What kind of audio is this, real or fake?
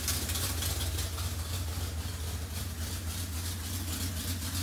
real